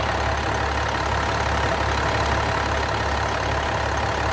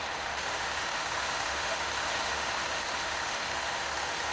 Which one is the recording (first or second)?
first